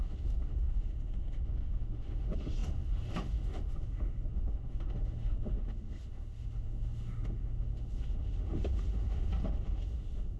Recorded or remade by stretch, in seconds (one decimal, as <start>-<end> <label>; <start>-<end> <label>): 0.0-10.4 remade